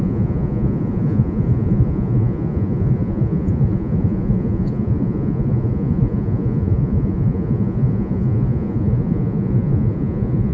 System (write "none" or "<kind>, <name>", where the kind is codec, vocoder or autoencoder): vocoder, Vocos